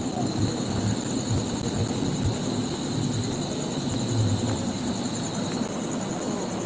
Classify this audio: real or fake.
real